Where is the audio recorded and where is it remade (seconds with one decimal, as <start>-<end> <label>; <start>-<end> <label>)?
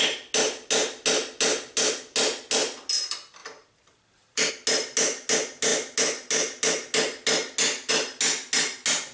0.0-3.4 recorded; 3.4-4.5 remade; 4.5-9.1 recorded